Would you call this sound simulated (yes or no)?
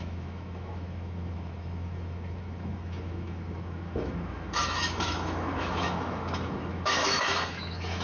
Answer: yes